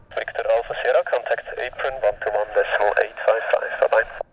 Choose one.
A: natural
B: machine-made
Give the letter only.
A